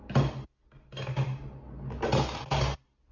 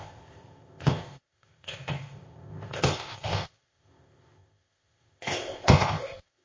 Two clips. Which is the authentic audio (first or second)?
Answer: first